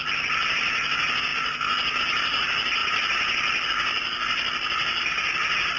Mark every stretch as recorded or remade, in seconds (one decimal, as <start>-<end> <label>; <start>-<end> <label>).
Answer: 0.0-5.8 recorded

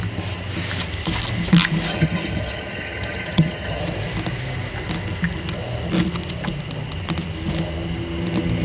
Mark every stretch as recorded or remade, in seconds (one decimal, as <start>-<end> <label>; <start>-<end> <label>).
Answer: 0.0-1.9 recorded; 1.9-3.8 remade; 3.8-8.6 recorded

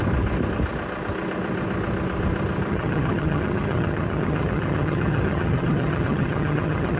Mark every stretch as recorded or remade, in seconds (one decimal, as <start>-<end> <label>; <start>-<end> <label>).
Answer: 0.0-2.7 recorded; 2.7-7.0 remade